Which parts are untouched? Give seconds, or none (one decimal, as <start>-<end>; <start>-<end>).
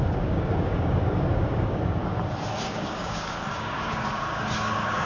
2.0-2.6